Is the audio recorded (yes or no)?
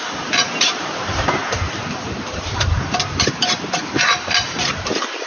no